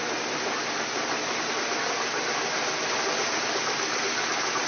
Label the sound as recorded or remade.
recorded